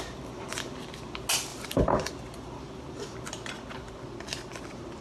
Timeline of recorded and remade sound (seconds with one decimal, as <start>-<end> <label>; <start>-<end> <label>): 0.0-5.0 recorded